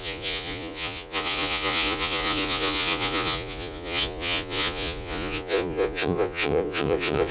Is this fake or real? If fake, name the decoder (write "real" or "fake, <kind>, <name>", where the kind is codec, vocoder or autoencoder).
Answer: fake, vocoder, Vocos